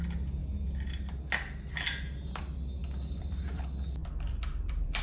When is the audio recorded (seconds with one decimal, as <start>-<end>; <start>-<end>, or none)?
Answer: 0.0-2.8; 3.6-4.0